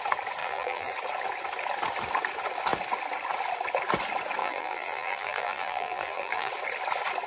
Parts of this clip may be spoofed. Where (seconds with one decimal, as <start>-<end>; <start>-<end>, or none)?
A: 0.4-0.9; 4.4-6.5